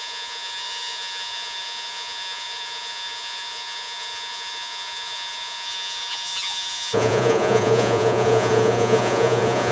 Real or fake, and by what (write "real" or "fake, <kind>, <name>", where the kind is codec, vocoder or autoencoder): fake, vocoder, Vocos